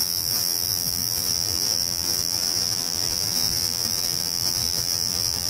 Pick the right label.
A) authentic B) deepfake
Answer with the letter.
B